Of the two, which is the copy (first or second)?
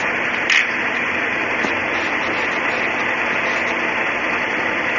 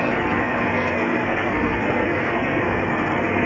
second